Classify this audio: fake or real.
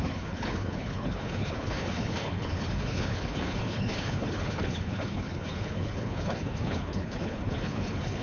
fake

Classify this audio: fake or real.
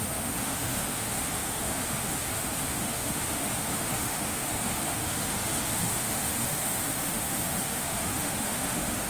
fake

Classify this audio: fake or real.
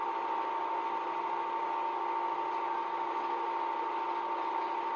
real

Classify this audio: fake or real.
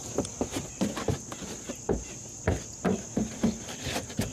real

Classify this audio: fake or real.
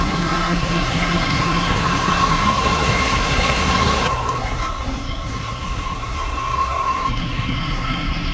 fake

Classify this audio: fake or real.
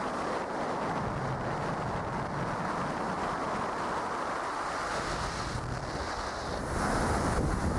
real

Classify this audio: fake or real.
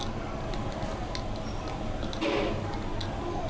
real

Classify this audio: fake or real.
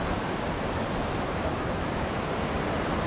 real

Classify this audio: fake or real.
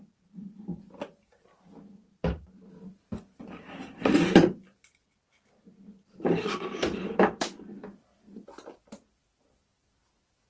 fake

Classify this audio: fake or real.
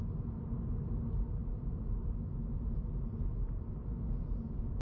real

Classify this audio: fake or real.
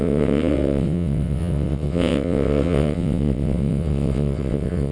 fake